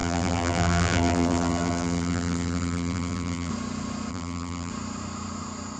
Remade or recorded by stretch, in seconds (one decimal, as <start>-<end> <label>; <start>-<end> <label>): 0.0-3.5 remade; 3.5-4.1 recorded; 4.1-4.7 remade; 4.7-5.8 recorded